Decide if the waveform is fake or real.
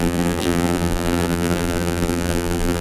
fake